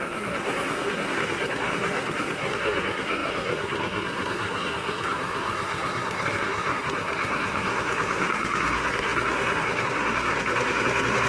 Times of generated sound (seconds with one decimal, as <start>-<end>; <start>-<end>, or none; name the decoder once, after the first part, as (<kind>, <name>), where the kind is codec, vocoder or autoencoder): 0.0-11.3 (codec, SNAC)